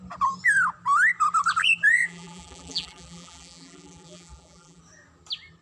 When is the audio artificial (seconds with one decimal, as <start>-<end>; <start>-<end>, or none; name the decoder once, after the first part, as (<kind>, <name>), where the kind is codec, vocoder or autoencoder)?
1.9-4.8 (vocoder, BigVGAN v2)